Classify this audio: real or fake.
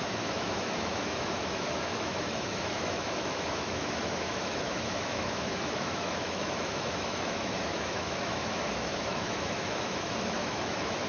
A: fake